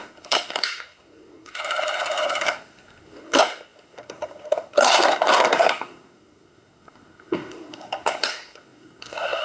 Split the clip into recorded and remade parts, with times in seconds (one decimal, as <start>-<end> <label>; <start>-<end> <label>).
0.0-9.4 remade